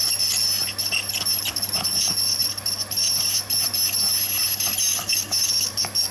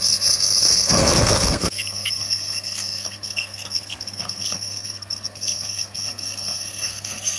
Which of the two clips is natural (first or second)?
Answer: first